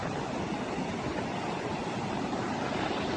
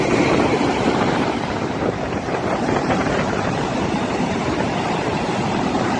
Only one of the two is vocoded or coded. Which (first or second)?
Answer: second